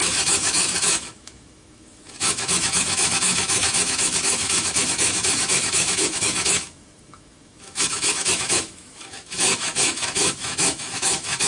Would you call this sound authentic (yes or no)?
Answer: no